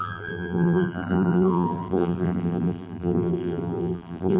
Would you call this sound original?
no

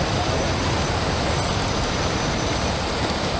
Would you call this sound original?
yes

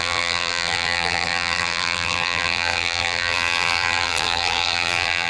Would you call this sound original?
no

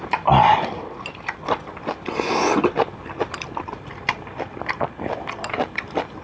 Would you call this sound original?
no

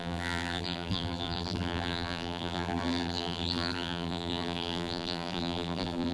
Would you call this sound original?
no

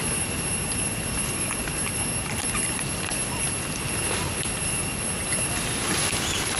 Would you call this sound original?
yes